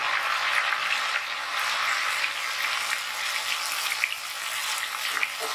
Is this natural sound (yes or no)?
yes